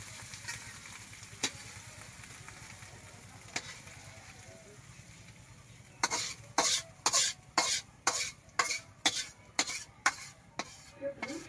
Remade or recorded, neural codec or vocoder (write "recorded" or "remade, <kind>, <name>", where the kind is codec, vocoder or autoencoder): recorded